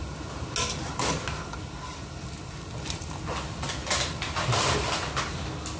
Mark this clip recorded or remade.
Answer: recorded